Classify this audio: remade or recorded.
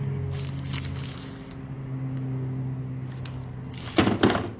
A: recorded